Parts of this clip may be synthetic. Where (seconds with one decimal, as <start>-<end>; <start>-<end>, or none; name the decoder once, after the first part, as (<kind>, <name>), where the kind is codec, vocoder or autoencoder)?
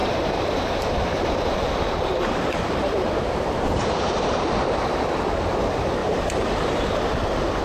0.0-4.5 (vocoder, BigVGAN v2); 6.0-7.0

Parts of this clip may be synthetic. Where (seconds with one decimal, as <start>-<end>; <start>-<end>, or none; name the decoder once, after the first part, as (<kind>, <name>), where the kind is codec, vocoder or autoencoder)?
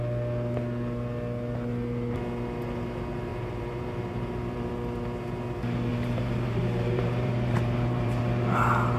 3.3-4.7 (vocoder, BigVGAN v2); 5.9-8.2